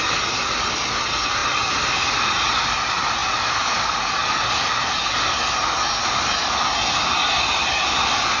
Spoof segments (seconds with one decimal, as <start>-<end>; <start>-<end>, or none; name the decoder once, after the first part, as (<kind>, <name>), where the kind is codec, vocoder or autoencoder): none